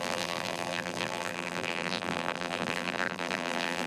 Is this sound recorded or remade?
remade